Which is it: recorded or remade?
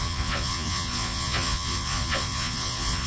remade